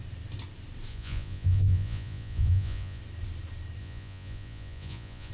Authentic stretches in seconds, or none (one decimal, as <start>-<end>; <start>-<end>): 0.0-0.9; 3.0-3.8